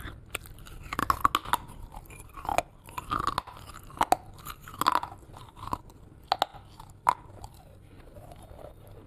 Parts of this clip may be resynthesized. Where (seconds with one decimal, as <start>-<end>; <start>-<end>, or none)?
none